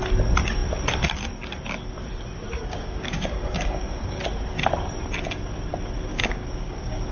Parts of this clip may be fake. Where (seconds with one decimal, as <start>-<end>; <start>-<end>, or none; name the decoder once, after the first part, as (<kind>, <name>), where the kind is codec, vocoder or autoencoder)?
2.5-4.2 (codec, DAC); 6.1-7.1